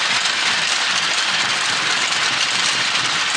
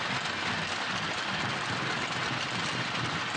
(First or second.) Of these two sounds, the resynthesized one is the first